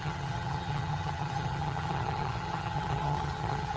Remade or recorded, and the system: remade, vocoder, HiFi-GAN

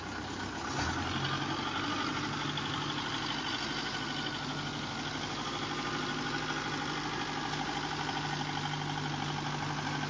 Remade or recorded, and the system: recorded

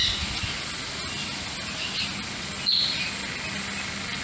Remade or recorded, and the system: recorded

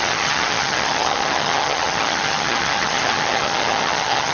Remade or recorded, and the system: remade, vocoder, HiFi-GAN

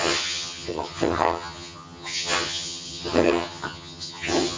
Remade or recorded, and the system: remade, vocoder, HiFi-GAN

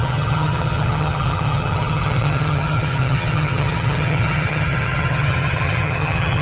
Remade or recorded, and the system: remade, vocoder, HiFi-GAN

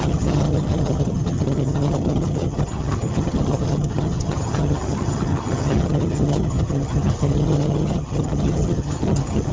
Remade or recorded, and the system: remade, vocoder, HiFi-GAN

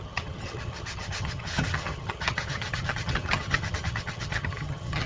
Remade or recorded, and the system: remade, vocoder, HiFi-GAN